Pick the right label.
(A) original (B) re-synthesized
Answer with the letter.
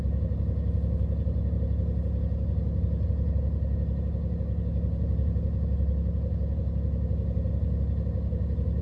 A